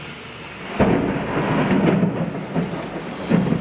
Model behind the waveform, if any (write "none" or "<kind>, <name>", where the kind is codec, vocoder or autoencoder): none